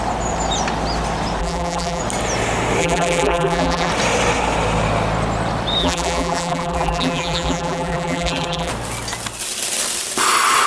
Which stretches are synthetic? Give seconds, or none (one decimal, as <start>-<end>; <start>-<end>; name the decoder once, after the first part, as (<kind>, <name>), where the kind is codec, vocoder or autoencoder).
1.4-2.0 (vocoder, BigVGAN v2); 2.8-3.9; 5.8-8.7